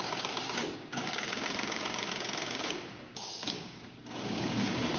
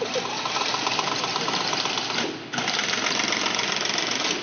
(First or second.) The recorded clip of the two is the second